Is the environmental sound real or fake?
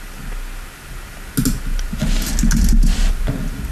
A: real